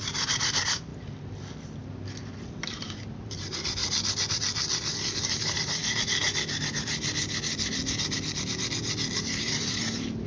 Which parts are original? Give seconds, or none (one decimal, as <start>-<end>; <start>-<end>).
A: 0.9-2.3; 3.8-5.3; 5.8-9.4